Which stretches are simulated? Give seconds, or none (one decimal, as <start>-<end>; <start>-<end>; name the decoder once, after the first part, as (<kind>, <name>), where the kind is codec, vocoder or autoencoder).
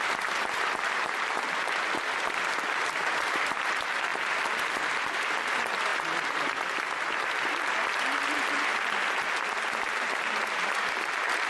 none